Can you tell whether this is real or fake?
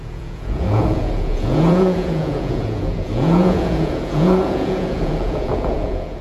fake